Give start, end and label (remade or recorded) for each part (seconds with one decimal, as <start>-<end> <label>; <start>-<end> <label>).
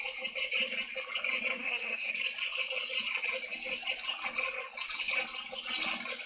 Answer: 0.0-1.6 recorded; 1.6-2.1 remade; 2.1-6.3 recorded